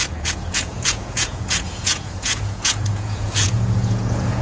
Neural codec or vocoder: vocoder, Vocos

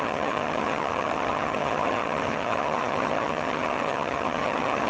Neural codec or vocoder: vocoder, HiFi-GAN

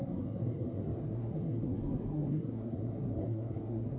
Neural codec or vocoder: codec, SNAC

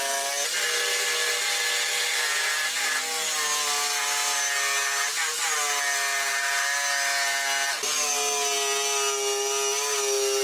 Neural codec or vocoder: none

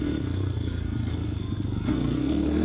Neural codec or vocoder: codec, SNAC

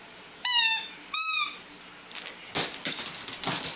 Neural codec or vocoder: none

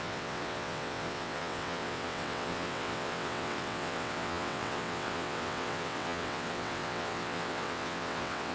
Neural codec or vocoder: vocoder, WaveNeXt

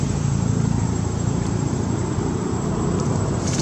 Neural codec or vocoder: vocoder, BigVGAN v2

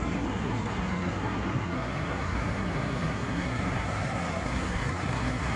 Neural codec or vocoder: codec, SNAC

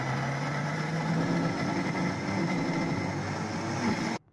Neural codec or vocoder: none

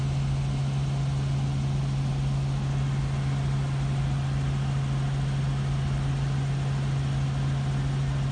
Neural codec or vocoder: none